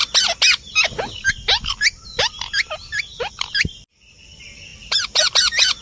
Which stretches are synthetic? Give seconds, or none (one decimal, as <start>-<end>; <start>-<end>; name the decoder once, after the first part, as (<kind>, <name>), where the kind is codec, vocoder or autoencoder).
4.7-5.3 (vocoder, BigVGAN v2)